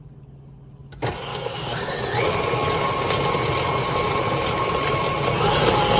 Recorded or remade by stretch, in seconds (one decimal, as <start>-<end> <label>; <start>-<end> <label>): 0.0-1.3 recorded; 1.3-2.0 remade; 2.0-6.0 recorded